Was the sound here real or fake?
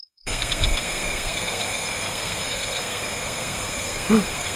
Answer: fake